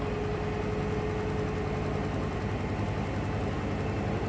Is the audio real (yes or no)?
yes